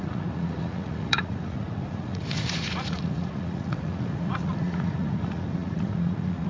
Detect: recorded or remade remade